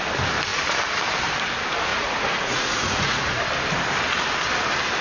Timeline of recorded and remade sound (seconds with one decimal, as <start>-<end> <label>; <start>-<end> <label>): 0.0-1.9 recorded; 1.9-3.4 remade; 3.4-5.0 recorded